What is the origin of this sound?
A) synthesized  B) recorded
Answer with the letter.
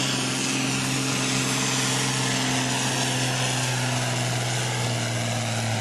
B